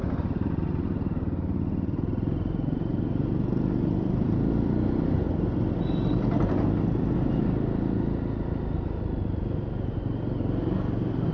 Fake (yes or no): no